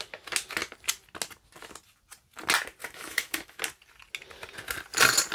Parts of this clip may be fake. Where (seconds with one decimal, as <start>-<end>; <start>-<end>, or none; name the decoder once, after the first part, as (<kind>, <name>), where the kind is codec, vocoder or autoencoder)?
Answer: 2.8-3.6 (autoencoder, DAC-VAE)

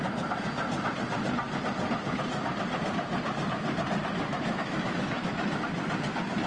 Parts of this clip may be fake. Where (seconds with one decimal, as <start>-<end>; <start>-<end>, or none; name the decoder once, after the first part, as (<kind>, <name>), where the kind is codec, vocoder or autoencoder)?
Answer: 4.3-5.5 (autoencoder, DAC-VAE)

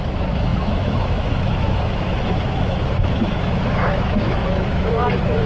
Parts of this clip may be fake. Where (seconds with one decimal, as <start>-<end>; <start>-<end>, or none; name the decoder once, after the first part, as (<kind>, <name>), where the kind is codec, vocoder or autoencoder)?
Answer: 0.0-5.5 (autoencoder, DAC-VAE)

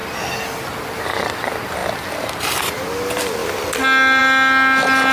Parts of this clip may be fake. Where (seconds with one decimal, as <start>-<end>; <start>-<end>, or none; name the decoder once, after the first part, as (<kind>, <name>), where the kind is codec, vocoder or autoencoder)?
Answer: none

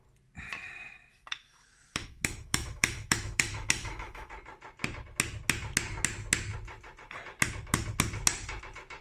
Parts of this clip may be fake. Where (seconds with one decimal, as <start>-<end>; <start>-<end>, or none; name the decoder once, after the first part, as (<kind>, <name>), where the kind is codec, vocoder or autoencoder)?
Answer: 1.1-4.3 (autoencoder, DAC-VAE)

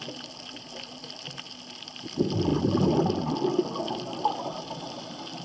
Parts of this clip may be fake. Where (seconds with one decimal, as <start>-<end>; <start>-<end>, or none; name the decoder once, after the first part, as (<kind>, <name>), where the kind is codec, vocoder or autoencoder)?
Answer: none

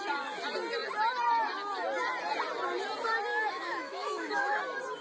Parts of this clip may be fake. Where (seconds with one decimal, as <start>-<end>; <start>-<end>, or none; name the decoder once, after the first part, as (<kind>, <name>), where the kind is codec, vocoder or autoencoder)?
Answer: 3.3-4.6 (autoencoder, DAC-VAE)